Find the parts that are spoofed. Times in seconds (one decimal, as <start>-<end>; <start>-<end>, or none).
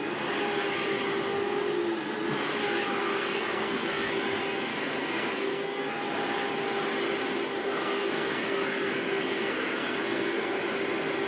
3.0-4.1; 4.7-6.0; 7.6-10.6